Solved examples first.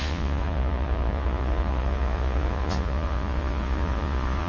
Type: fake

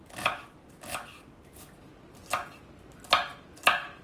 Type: real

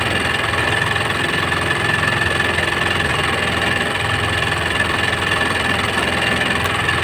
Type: fake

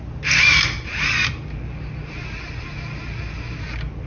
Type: real